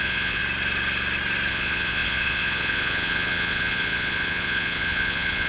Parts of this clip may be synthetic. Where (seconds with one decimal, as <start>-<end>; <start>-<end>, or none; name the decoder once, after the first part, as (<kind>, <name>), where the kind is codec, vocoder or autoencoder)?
0.0-0.4 (vocoder, Vocos); 1.5-5.5